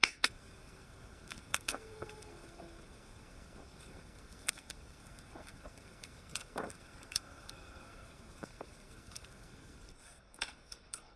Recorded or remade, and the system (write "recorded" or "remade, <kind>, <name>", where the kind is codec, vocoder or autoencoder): remade, codec, SNAC